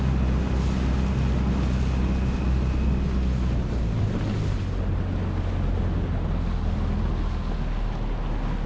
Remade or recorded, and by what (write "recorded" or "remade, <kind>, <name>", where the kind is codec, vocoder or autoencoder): recorded